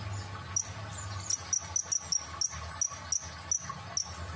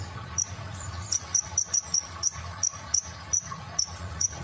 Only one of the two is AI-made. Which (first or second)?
second